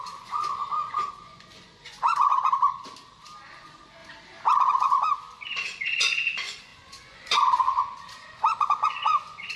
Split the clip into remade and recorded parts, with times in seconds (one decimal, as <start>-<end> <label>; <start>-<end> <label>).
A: 0.0-2.3 remade; 2.3-3.5 recorded; 3.5-4.0 remade; 4.0-4.5 recorded; 4.5-9.6 remade